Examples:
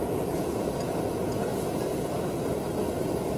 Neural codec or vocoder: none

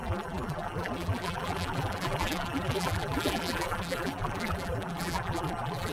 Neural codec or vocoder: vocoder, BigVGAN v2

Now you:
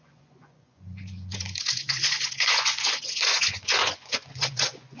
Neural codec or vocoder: vocoder, Vocos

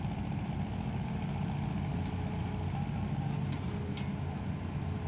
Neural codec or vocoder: none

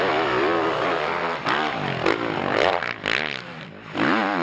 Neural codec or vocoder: none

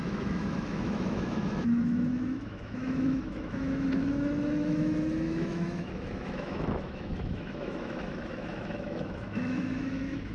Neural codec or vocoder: autoencoder, DAC-VAE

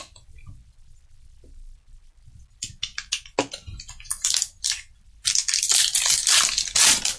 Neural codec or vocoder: none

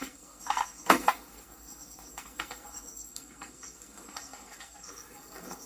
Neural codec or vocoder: codec, SNAC